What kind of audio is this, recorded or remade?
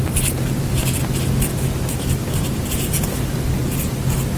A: recorded